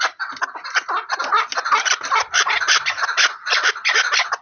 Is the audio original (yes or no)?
yes